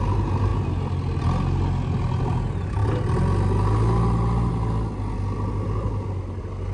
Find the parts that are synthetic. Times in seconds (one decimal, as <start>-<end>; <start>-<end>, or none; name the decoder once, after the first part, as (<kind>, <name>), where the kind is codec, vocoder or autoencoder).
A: none